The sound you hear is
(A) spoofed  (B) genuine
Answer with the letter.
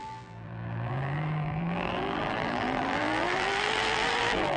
A